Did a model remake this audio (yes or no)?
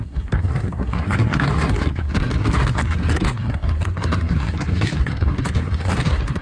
yes